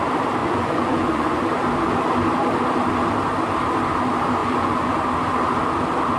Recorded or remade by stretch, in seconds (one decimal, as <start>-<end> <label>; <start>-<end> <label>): 0.0-0.4 recorded; 0.4-1.4 remade; 1.4-4.4 recorded; 4.4-4.9 remade; 4.9-6.2 recorded

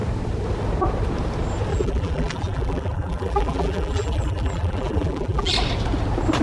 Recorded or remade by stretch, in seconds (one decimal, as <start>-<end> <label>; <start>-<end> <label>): 0.0-1.7 recorded; 1.7-5.5 remade; 5.5-6.4 recorded

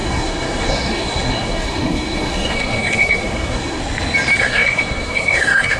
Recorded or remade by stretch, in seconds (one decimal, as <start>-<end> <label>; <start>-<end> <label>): 0.0-3.8 remade; 3.8-4.4 recorded; 4.4-5.8 remade

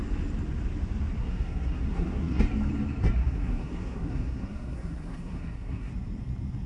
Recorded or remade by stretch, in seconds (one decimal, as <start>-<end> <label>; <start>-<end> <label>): 0.0-1.2 recorded; 1.2-2.4 remade; 2.4-3.2 recorded; 3.2-5.9 remade; 5.9-6.7 recorded

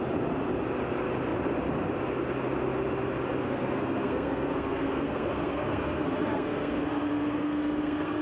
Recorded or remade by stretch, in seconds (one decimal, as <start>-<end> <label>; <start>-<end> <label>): 0.0-3.4 recorded; 3.4-8.2 remade

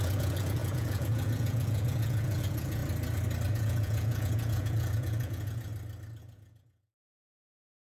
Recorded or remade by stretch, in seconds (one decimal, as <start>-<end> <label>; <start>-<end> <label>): 0.0-2.8 remade; 2.8-3.5 recorded; 3.5-5.7 remade; 5.7-6.2 recorded; 6.2-7.9 remade